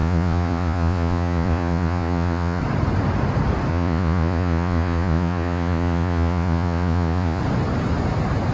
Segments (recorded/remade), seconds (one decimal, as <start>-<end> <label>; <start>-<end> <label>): 0.0-2.6 remade; 2.6-3.7 recorded; 3.7-7.4 remade; 7.4-8.5 recorded